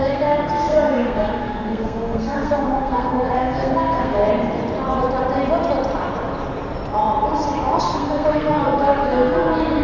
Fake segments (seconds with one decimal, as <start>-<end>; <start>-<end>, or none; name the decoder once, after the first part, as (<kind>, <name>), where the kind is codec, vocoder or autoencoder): 0.0-4.2 (codec, SNAC); 7.8-9.8